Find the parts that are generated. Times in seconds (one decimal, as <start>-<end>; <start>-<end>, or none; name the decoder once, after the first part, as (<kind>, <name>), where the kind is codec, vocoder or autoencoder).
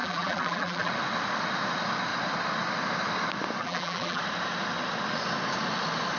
0.0-0.9 (vocoder, BigVGAN v2); 3.6-4.2